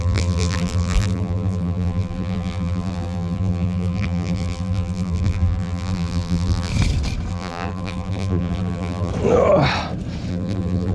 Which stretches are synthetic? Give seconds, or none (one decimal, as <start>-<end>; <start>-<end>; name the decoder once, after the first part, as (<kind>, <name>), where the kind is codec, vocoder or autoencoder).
0.0-6.7 (vocoder, BigVGAN v2); 7.3-9.1; 10.3-10.9